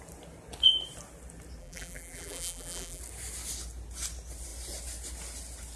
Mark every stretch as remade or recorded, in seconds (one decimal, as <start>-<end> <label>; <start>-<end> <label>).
0.0-1.6 recorded; 1.6-3.0 remade; 3.0-5.8 recorded